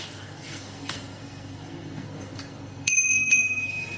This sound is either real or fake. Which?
fake